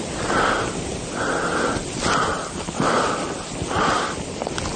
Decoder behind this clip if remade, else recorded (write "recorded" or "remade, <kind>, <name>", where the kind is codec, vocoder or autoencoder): recorded